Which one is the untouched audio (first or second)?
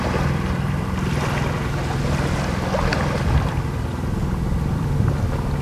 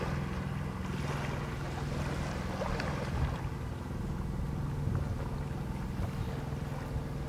second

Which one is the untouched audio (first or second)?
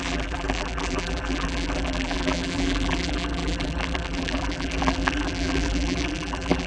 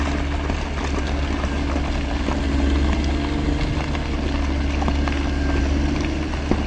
second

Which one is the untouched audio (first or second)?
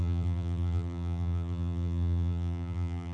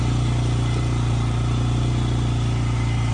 second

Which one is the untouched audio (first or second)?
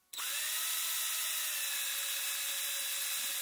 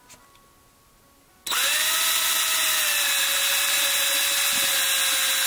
second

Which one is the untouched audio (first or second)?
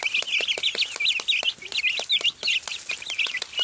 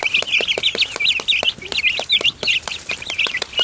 first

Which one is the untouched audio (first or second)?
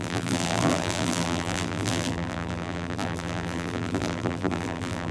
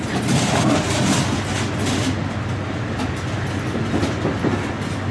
second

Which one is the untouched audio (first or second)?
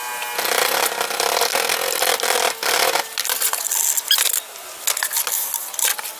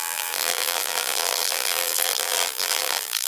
first